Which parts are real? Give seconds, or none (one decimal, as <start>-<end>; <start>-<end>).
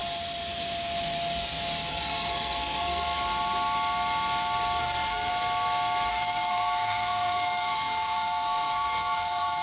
0.0-1.9; 3.2-4.8; 5.3-6.1